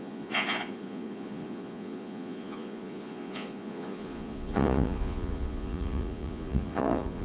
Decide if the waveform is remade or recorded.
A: remade